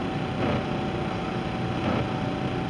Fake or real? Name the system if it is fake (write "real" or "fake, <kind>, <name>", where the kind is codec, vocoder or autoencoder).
real